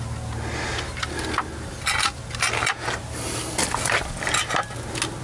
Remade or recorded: recorded